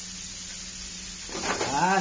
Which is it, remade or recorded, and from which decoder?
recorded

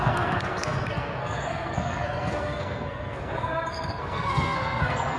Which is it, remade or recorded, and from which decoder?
remade, codec, SNAC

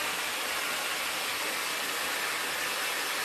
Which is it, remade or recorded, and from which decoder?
recorded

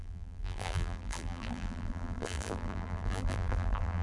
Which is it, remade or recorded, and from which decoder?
remade, vocoder, BigVGAN v2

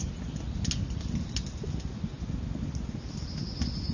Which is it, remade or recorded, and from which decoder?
recorded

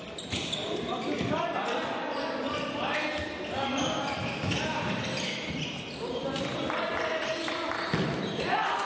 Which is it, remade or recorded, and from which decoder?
recorded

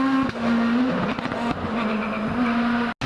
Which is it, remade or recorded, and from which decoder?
recorded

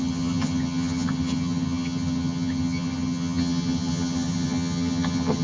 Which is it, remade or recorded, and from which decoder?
remade, vocoder, HiFi-GAN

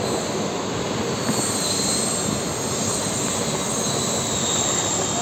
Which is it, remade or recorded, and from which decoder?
recorded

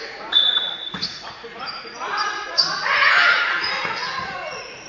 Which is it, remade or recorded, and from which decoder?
remade, vocoder, Vocos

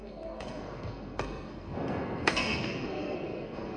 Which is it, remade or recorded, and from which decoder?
remade, codec, SNAC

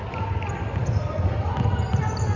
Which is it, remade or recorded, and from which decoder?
recorded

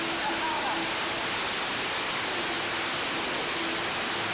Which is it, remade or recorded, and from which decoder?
recorded